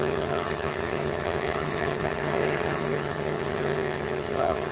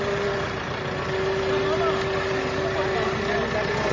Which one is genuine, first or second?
second